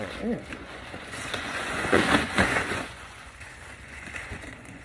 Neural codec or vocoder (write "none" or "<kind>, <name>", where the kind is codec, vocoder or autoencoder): vocoder, Vocos